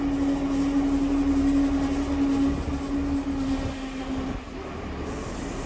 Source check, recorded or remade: recorded